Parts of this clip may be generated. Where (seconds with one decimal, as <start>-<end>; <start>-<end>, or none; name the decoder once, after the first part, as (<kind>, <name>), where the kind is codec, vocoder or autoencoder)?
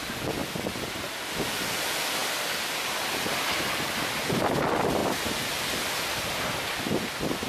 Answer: 0.0-0.4 (vocoder, BigVGAN v2); 1.2-2.2; 2.7-7.5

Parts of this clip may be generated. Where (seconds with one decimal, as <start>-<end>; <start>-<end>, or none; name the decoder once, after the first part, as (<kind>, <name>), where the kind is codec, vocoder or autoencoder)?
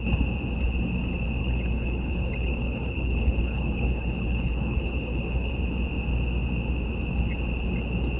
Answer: 1.4-5.5 (codec, HILCodec)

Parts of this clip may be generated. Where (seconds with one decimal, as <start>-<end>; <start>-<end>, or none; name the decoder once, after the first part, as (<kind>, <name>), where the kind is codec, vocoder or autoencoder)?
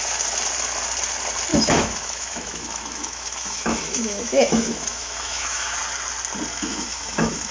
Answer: 1.5-5.8 (autoencoder, DAC-VAE); 6.5-7.5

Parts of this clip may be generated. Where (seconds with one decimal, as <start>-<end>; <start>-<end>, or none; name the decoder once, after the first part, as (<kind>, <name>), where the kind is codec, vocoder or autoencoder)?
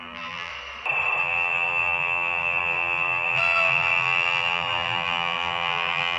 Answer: 0.0-0.5 (vocoder, BigVGAN v2); 1.2-6.2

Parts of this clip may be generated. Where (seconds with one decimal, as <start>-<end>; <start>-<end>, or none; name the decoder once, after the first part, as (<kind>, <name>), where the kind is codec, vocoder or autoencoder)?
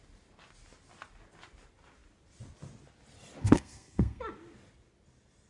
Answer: 3.4-4.2 (codec, SNAC)